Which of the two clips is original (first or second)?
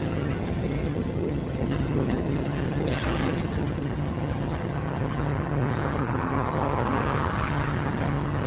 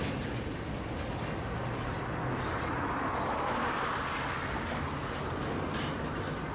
second